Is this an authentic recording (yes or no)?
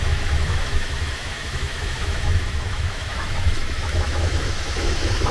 no